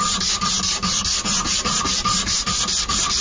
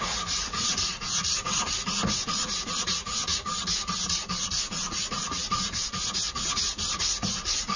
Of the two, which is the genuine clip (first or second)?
first